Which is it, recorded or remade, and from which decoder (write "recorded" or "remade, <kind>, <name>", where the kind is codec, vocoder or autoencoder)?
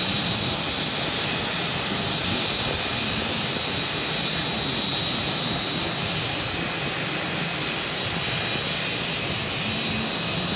recorded